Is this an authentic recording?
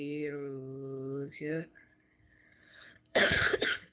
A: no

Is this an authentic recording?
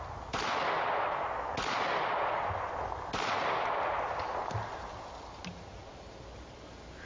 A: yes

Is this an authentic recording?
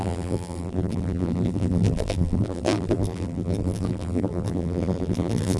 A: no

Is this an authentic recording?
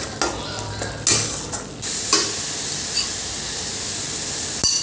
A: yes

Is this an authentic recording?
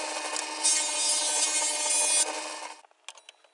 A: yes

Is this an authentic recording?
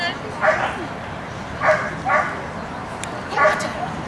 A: yes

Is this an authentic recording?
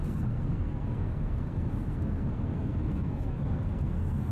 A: no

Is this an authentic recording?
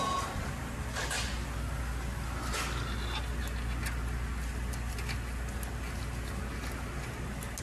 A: yes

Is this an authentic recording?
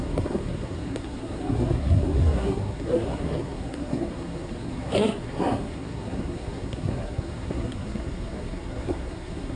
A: no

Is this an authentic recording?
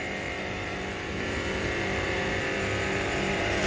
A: no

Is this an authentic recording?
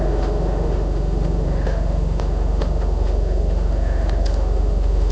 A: no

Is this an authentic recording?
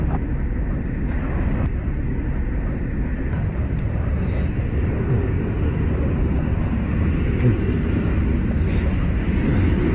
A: yes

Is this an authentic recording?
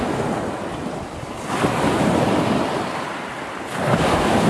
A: yes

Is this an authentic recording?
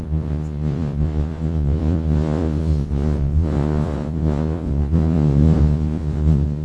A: no